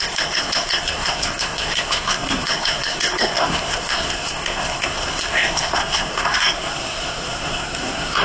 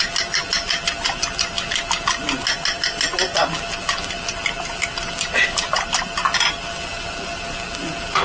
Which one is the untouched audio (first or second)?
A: second